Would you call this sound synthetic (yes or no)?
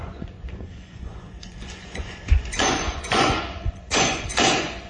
yes